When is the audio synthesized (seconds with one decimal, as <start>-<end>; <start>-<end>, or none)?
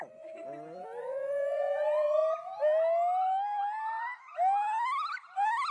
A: 0.0-0.4; 1.0-2.2